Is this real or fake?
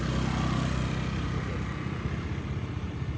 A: real